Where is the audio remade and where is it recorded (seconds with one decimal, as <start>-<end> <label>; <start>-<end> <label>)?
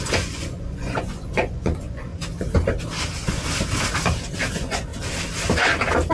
0.0-2.1 remade; 2.1-4.5 recorded; 4.5-4.9 remade; 4.9-6.1 recorded